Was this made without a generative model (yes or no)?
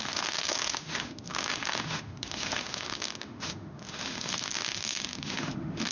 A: no